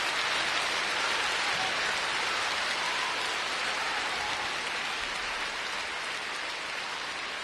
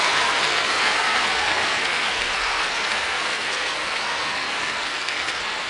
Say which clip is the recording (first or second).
first